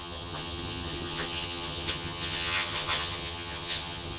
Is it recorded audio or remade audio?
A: remade